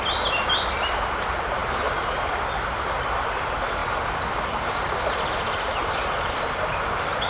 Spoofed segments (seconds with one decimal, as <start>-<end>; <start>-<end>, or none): none